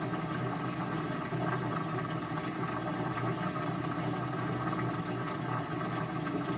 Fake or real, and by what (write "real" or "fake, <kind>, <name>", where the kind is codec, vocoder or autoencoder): real